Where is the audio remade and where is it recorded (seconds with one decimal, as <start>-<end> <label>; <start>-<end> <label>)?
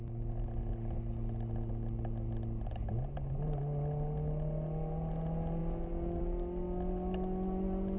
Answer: 0.0-8.0 recorded